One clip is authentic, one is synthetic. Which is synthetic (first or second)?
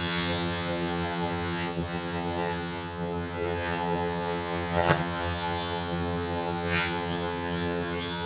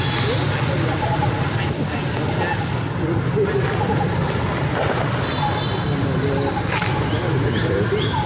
first